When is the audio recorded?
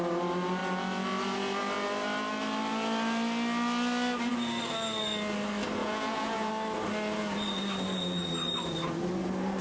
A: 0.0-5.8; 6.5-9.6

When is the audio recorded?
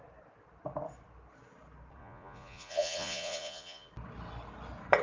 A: 0.0-2.0; 3.9-5.0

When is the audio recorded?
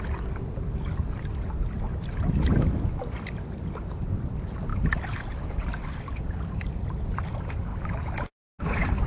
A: 0.0-9.1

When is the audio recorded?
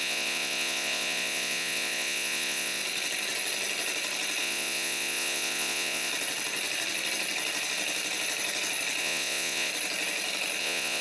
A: 2.8-4.4; 6.1-9.0; 9.7-10.6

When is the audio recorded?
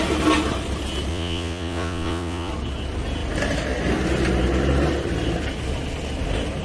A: 0.0-1.1; 2.5-6.6